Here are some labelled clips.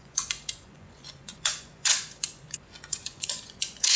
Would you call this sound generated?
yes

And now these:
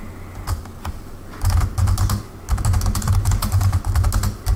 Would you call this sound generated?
no